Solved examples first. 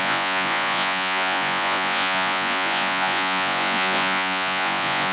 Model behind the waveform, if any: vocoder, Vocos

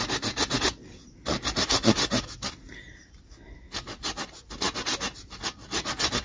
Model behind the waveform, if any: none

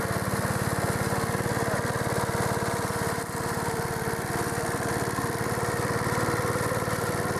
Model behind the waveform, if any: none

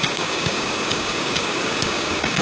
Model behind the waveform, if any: codec, DAC